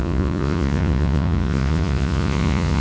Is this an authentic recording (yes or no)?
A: no